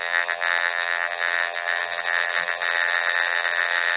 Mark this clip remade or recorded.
remade